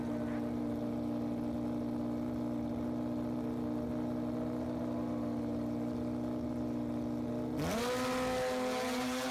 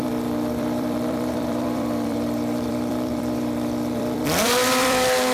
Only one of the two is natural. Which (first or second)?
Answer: first